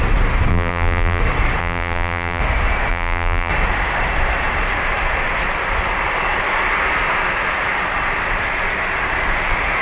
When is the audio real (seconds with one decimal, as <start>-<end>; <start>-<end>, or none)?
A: 0.0-0.5; 1.2-1.6; 2.4-2.9; 3.5-9.8

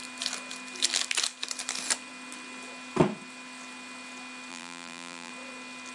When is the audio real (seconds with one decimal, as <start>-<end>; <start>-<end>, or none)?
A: 0.0-4.5; 5.3-5.9

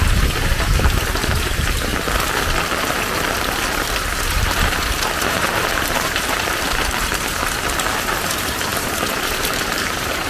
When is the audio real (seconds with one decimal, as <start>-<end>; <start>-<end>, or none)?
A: 1.9-4.0; 7.1-8.1